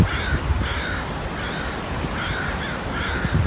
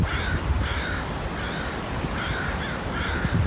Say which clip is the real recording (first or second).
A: first